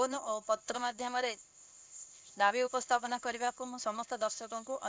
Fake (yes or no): yes